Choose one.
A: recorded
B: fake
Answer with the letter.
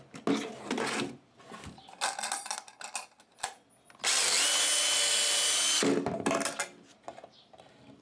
A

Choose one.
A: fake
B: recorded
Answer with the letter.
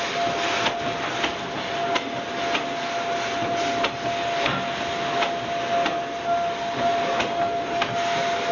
B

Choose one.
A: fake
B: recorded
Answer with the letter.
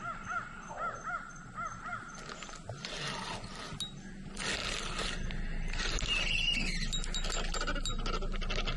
B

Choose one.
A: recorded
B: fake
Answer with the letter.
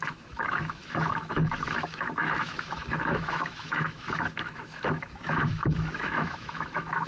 B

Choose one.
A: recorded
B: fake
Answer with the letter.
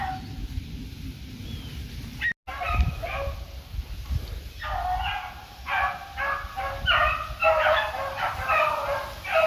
A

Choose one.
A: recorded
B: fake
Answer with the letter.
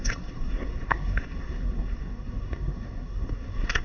B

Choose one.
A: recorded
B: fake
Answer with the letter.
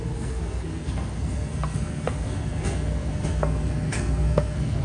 B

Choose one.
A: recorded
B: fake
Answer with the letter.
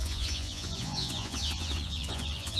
B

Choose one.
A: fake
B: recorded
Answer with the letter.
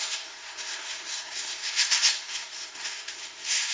A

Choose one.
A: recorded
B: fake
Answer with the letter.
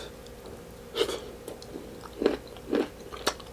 A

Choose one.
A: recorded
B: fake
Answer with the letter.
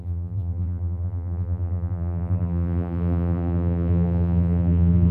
B